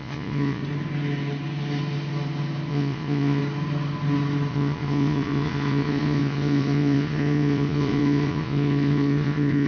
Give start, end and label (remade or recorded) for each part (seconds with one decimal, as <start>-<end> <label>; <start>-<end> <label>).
0.0-0.6 remade; 0.6-2.7 recorded; 2.7-3.4 remade; 3.4-4.5 recorded; 4.5-9.7 remade